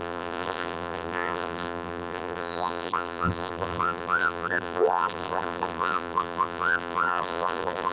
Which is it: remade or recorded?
remade